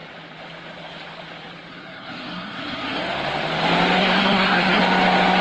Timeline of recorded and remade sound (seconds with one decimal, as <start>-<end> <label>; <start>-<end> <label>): 0.0-1.7 recorded; 1.7-3.0 remade; 3.0-4.0 recorded; 4.0-4.8 remade; 4.8-5.4 recorded